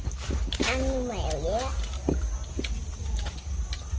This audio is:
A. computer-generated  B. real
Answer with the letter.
B